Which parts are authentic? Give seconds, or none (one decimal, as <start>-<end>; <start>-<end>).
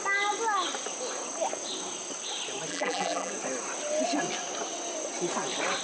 0.0-2.7; 3.3-5.8